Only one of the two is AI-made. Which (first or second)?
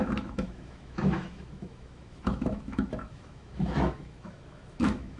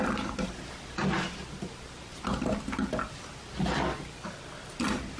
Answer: first